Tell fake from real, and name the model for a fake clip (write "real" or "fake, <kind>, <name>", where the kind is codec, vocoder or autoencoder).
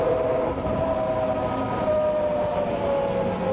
real